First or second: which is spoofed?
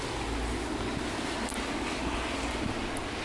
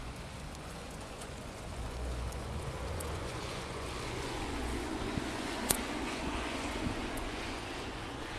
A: second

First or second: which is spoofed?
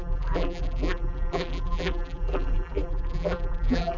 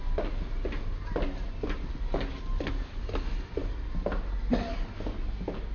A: first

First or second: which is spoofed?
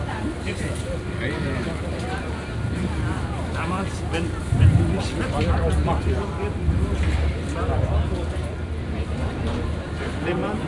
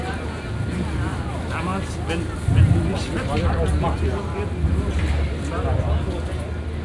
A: first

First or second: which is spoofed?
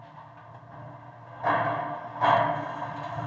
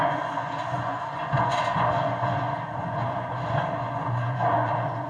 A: second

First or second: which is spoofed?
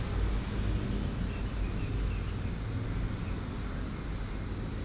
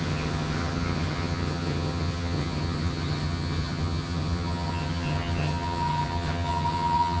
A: second